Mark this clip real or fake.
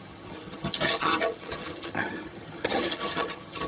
fake